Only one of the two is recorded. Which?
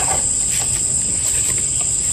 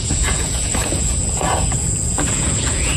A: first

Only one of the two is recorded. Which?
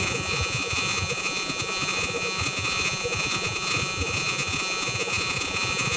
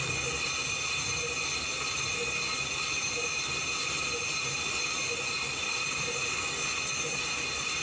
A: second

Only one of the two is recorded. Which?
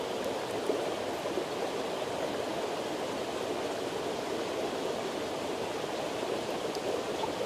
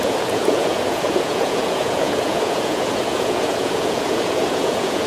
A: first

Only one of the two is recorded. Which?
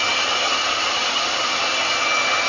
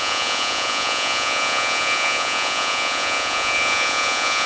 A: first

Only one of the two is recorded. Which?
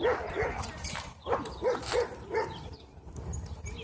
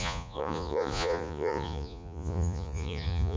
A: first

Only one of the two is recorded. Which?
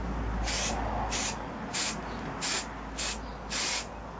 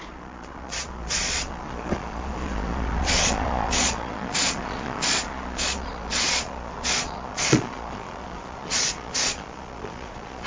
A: first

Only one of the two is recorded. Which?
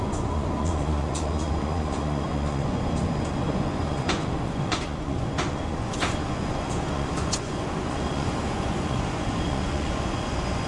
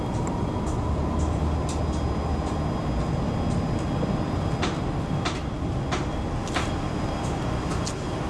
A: second